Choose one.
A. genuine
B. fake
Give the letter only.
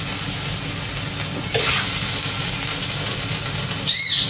A